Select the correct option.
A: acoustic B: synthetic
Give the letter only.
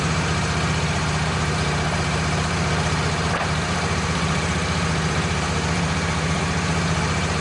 B